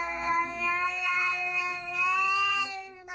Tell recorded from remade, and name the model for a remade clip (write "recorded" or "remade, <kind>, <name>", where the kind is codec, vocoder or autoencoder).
remade, codec, SNAC